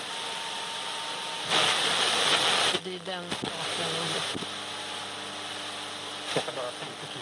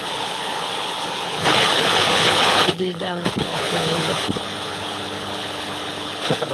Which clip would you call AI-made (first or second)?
second